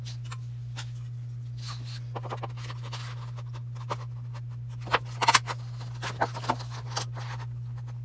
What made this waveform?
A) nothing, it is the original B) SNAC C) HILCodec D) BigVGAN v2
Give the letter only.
A